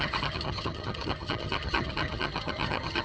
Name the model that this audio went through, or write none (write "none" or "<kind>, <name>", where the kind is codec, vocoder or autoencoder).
vocoder, HiFi-GAN